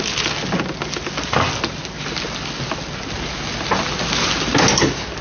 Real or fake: real